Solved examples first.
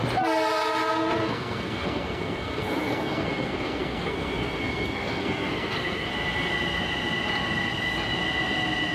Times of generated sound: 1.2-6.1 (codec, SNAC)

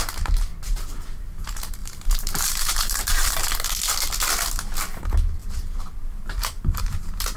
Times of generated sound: 1.8-3.5 (vocoder, BigVGAN v2); 5.4-6.8

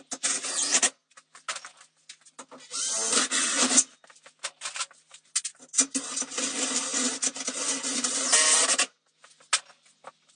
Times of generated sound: none

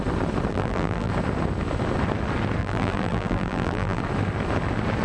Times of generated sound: 0.5-1.1 (vocoder, BigVGAN v2); 2.6-4.0

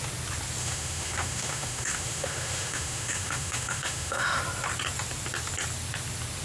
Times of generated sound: 0.6-4.4 (autoencoder, DAC-VAE)

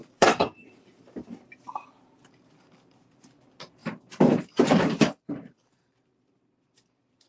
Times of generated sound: 0.0-2.7 (vocoder, BigVGAN v2); 3.8-6.5

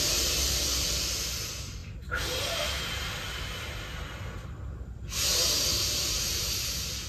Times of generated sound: none

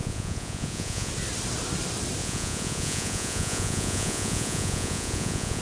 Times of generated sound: 0.0-1.1 (vocoder, Vocos); 2.2-5.6